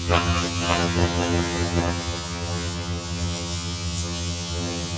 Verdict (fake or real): fake